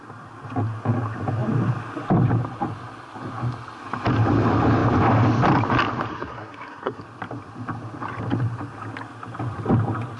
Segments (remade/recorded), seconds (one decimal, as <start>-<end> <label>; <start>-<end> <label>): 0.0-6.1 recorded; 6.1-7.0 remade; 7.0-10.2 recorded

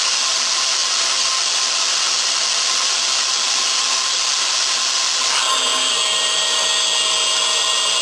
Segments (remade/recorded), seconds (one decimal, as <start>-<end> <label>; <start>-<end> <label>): 0.0-8.0 recorded

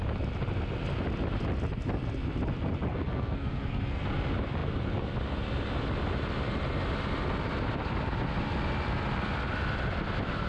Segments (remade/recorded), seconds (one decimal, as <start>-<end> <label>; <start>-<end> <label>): 0.0-2.9 recorded; 2.9-4.0 remade; 4.0-10.5 recorded

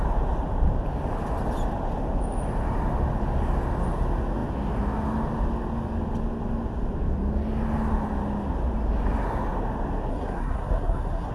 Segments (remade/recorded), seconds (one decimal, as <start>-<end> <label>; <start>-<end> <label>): 0.0-10.1 recorded; 10.1-11.3 remade